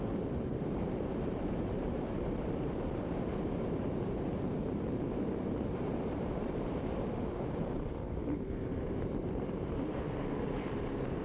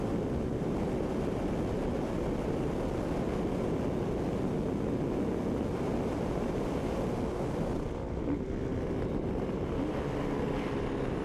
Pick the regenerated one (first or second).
first